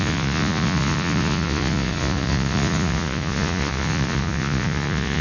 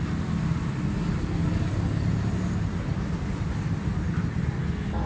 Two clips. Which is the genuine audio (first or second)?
second